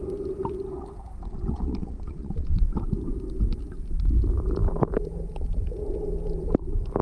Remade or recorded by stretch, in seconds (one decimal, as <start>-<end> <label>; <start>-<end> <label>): 0.0-1.2 recorded; 1.2-2.6 remade; 2.6-7.0 recorded